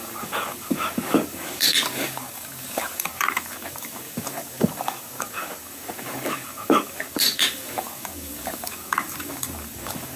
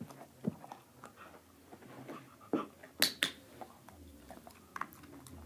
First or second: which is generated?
first